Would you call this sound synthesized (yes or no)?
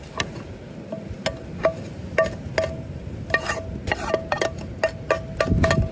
no